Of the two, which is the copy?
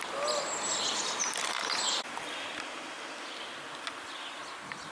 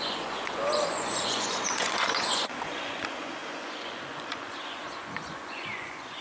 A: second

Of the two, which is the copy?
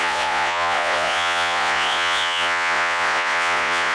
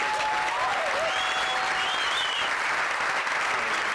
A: first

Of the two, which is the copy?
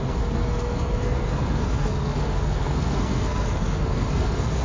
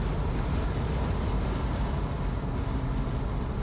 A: first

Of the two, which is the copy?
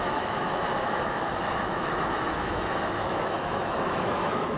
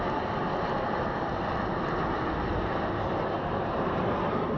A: first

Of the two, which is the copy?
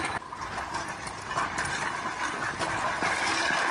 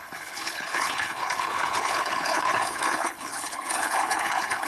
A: second